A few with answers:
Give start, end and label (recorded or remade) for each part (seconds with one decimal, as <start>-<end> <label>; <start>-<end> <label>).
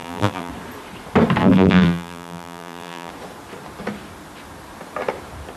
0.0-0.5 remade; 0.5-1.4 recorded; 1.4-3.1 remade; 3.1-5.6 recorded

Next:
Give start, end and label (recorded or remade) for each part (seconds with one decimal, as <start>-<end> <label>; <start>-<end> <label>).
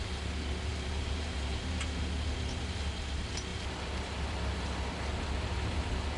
0.0-0.7 recorded; 0.7-2.1 remade; 2.1-3.5 recorded; 3.5-4.3 remade; 4.3-6.2 recorded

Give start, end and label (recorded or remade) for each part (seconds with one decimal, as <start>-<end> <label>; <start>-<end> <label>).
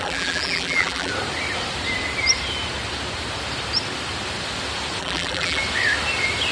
0.0-1.1 remade; 1.1-5.0 recorded; 5.0-5.6 remade; 5.6-6.5 recorded